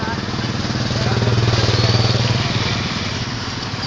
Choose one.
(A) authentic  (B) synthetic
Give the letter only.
A